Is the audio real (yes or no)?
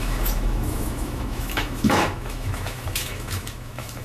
no